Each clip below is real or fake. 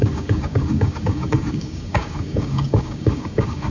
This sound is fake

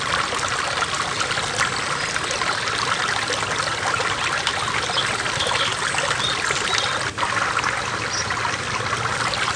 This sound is real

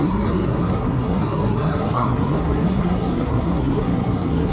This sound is fake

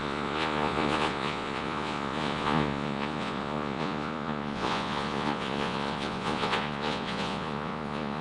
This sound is fake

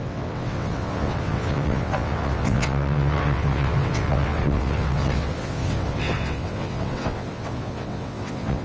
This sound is fake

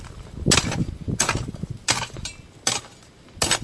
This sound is real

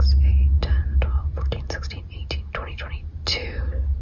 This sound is real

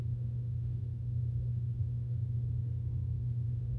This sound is fake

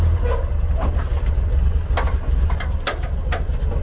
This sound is real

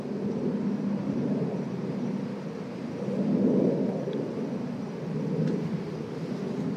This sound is real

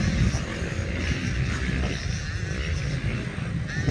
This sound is real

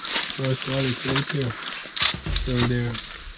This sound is real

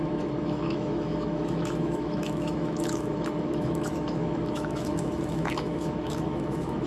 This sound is fake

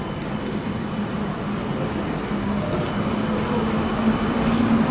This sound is real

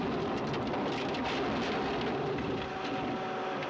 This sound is real